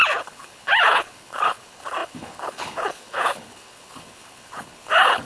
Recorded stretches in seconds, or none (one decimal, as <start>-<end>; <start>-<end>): none